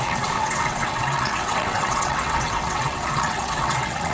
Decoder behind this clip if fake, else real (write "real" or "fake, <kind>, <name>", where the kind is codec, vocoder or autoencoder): fake, vocoder, WaveNeXt